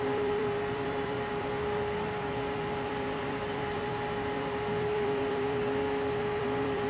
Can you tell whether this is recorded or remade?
remade